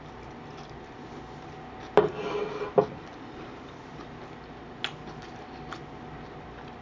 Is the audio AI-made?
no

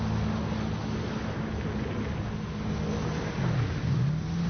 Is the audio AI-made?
no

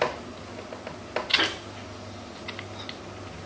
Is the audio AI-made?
no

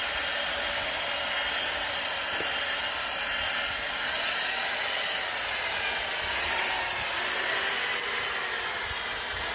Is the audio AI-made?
no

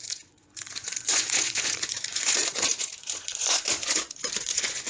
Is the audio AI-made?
yes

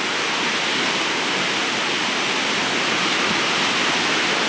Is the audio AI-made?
no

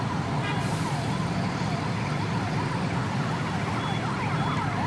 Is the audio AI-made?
no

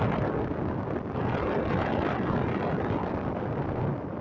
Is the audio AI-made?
no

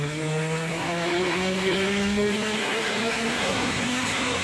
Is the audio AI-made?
yes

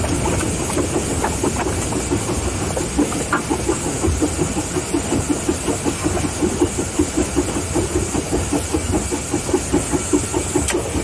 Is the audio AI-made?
no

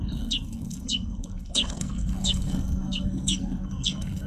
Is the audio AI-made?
yes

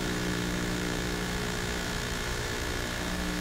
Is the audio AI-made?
yes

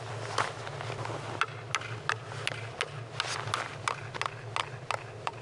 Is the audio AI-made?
no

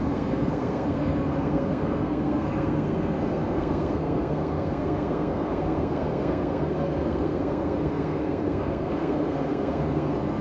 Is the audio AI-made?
yes